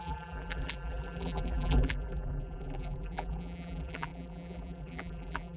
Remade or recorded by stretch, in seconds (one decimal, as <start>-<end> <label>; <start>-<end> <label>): 0.0-5.6 remade